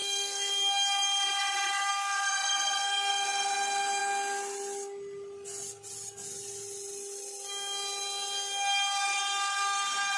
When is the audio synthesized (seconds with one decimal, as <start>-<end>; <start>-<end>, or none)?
0.0-0.5; 1.9-3.1